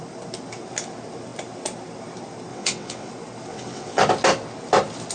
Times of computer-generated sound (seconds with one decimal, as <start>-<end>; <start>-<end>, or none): 2.5-3.1; 3.5-4.0